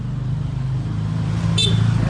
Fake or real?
real